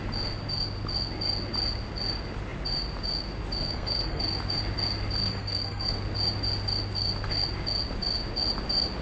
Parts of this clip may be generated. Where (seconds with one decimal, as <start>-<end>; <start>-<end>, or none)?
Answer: 3.6-4.2; 5.2-5.9